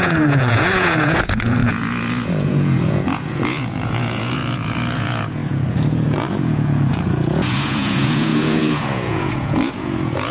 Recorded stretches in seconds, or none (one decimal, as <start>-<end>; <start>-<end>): none

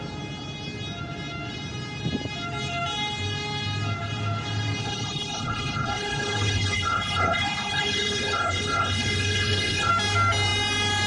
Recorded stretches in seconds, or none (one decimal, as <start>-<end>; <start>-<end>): 0.0-4.8; 9.9-11.1

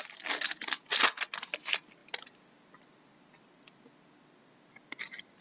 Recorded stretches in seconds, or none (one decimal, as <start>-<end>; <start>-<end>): 0.0-5.4

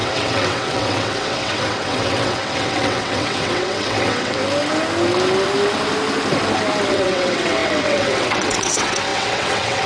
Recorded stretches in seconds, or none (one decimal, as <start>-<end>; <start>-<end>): 4.4-6.9

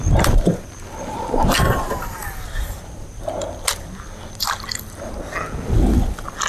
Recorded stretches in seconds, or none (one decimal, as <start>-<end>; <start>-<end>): 0.0-6.5